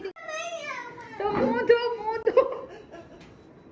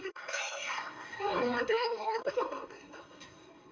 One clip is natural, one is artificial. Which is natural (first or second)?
first